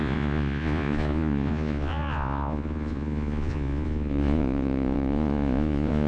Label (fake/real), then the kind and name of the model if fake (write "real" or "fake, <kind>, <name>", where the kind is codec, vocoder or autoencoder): fake, vocoder, Vocos